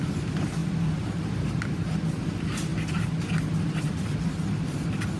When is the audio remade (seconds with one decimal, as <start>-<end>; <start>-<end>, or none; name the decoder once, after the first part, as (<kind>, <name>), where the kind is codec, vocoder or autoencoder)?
0.6-1.8 (vocoder, BigVGAN v2)